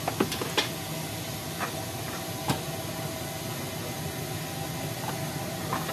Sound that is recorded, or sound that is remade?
recorded